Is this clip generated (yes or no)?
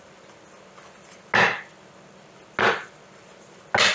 no